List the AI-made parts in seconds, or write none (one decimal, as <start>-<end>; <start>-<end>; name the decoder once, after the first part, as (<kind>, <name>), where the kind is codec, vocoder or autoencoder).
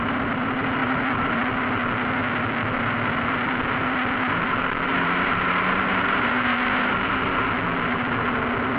0.8-1.5 (vocoder, BigVGAN v2); 4.9-6.9